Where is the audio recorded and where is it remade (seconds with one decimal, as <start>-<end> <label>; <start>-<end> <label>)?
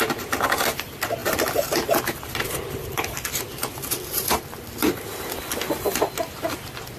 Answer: 0.0-1.2 recorded; 1.2-5.0 remade; 5.0-7.0 recorded